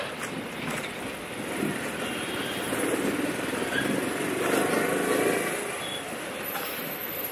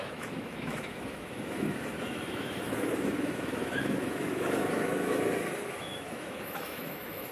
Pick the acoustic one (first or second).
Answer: first